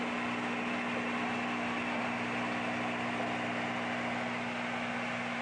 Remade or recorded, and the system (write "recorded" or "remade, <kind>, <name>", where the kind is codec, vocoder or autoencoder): recorded